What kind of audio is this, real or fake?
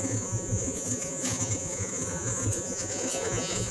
fake